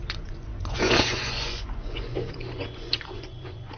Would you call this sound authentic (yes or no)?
no